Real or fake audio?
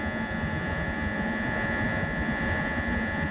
fake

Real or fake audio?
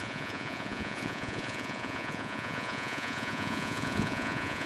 fake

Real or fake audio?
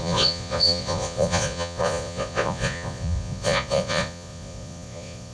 fake